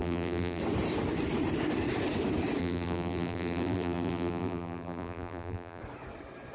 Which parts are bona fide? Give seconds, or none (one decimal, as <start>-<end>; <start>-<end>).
0.6-2.6; 5.8-6.5